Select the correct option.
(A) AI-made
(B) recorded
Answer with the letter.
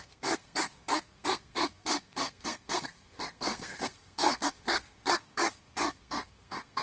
A